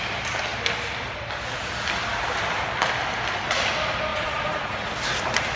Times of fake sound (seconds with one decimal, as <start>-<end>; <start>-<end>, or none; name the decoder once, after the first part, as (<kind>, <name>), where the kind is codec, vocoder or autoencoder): 4.1-4.9 (vocoder, Vocos)